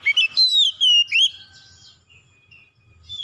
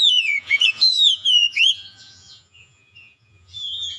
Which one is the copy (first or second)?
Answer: second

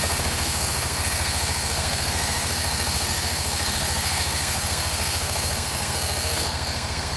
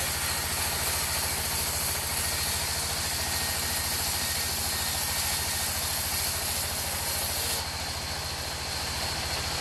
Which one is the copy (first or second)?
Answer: first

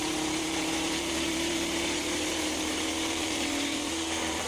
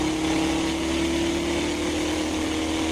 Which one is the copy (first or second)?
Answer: first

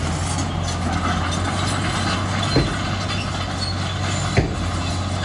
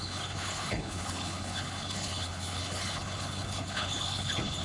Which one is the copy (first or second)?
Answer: second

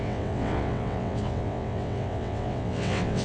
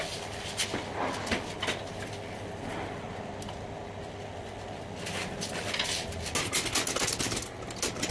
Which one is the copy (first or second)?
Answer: first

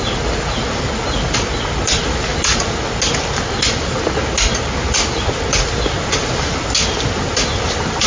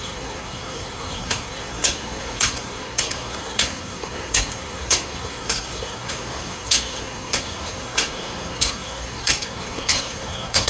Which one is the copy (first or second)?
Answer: second